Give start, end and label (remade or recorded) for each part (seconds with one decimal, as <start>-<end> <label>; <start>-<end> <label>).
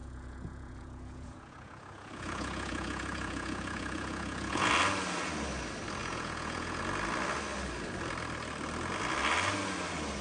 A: 0.0-4.7 remade; 4.7-6.0 recorded; 6.0-6.8 remade; 6.8-10.2 recorded